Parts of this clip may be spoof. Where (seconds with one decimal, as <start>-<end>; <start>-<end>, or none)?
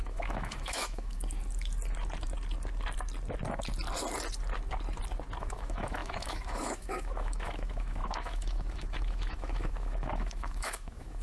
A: 0.0-1.2; 5.4-11.2